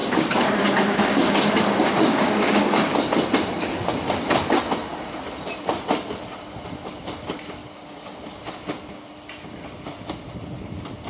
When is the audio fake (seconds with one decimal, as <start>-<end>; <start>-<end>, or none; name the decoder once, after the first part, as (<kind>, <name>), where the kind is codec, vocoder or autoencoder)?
0.0-3.0 (codec, DAC); 7.6-8.2